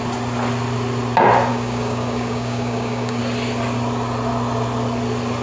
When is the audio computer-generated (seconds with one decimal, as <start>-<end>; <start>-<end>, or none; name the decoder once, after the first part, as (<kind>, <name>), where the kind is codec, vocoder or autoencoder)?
1.5-3.2 (codec, DAC)